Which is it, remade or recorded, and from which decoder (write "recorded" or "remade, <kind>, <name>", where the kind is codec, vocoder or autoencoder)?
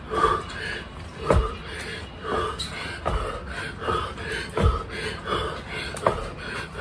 recorded